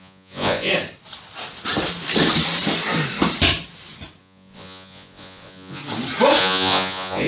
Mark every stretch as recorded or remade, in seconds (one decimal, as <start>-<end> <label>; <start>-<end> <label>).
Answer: 0.0-0.7 remade; 0.7-4.2 recorded; 4.2-5.8 remade; 5.8-6.4 recorded; 6.4-7.3 remade